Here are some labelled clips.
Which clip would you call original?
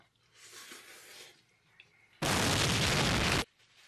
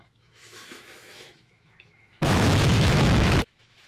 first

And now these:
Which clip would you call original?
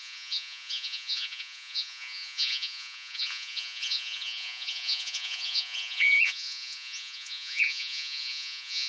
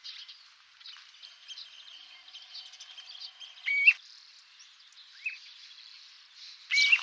second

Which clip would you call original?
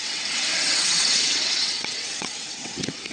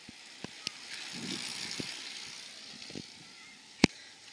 second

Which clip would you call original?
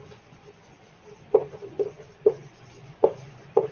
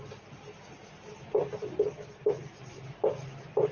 second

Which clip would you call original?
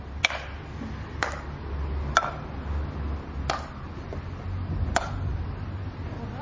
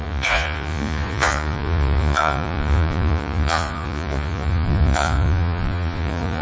first